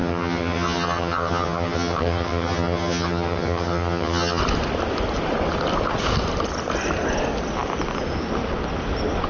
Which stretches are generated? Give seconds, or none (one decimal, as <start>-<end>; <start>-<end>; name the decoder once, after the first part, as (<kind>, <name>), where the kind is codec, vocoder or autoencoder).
0.0-4.4 (vocoder, HiFi-GAN)